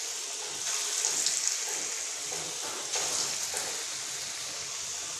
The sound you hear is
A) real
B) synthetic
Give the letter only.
A